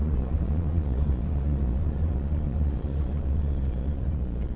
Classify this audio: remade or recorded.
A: remade